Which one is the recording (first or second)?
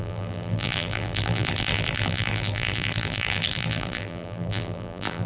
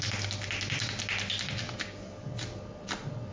second